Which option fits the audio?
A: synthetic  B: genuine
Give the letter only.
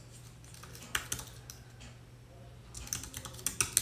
B